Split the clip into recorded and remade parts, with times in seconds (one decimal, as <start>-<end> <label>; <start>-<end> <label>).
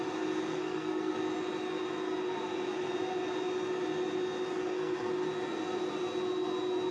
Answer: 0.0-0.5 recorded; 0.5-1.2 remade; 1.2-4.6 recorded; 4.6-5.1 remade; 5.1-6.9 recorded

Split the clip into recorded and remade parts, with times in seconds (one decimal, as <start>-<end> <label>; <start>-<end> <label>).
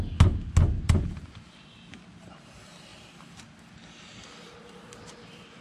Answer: 0.0-5.6 recorded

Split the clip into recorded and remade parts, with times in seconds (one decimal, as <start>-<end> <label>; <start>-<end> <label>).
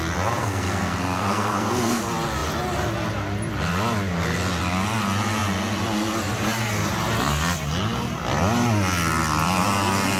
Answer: 0.0-0.4 recorded; 0.4-2.0 remade; 2.0-10.2 recorded